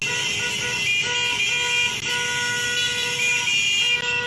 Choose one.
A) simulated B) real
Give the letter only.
B